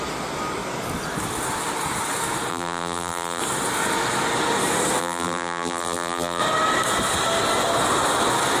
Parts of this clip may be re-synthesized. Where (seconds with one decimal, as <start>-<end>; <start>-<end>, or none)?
2.5-3.4; 5.0-6.4